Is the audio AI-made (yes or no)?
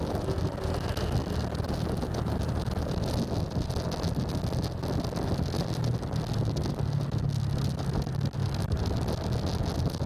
no